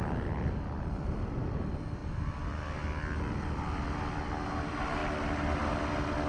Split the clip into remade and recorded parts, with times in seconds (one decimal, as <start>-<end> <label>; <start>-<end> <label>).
0.0-6.3 recorded

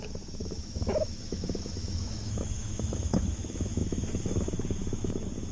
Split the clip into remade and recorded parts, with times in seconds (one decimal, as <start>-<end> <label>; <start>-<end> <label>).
0.0-5.5 remade

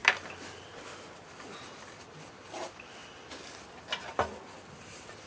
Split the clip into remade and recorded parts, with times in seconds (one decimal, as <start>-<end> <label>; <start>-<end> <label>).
0.0-5.3 recorded

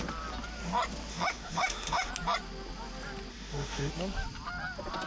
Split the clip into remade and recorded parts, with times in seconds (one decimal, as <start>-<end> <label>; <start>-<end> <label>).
0.0-1.1 recorded; 1.1-2.1 remade; 2.1-3.3 recorded; 3.3-3.9 remade; 3.9-5.1 recorded

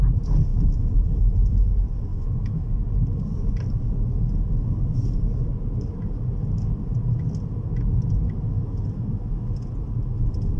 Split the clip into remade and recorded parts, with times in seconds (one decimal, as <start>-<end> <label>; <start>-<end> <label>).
0.0-0.5 recorded; 0.5-1.5 remade; 1.5-2.1 recorded; 2.1-2.9 remade; 2.9-10.6 recorded

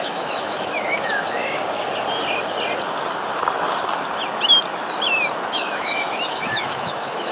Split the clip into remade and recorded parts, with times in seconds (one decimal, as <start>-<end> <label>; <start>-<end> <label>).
0.0-1.4 remade; 1.4-5.3 recorded; 5.3-7.3 remade

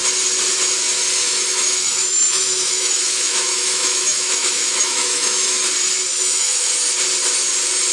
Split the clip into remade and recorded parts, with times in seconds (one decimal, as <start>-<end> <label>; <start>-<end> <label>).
0.0-1.2 recorded; 1.2-5.5 remade; 5.5-6.1 recorded; 6.1-6.7 remade; 6.7-7.9 recorded